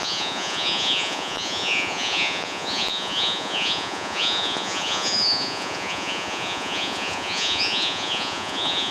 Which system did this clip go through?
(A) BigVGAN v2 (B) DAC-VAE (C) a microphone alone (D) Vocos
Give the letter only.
D